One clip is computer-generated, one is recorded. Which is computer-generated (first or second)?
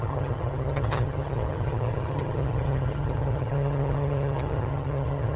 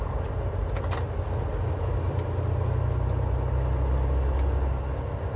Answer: first